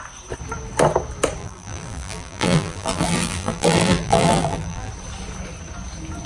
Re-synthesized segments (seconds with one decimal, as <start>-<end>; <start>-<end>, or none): 1.4-4.9